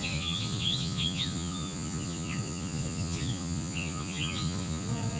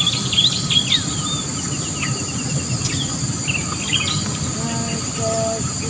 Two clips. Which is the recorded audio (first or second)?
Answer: second